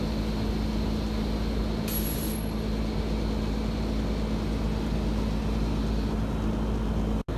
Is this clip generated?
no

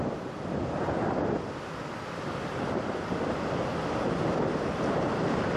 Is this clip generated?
yes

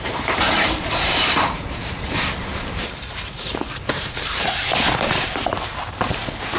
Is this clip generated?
yes